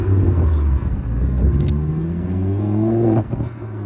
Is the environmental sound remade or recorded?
remade